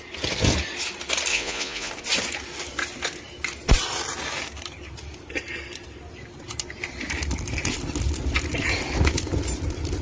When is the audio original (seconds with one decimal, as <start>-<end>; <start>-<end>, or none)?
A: 0.0-1.3; 1.9-10.0